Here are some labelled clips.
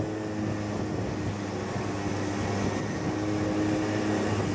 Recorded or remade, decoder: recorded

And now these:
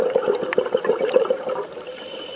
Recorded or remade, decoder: remade, vocoder, BigVGAN v2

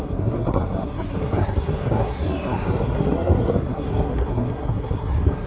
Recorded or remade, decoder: remade, codec, SNAC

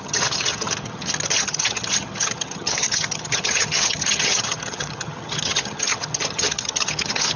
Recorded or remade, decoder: remade, vocoder, HiFi-GAN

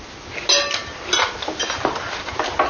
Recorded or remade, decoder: recorded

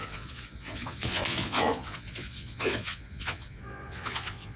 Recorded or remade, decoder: remade, vocoder, Vocos